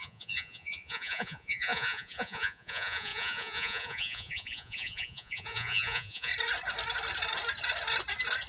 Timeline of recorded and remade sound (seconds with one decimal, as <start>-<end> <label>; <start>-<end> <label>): 0.0-6.3 remade; 6.3-8.5 recorded